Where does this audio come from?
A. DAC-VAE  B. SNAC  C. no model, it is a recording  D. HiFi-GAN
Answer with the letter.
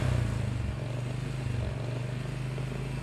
C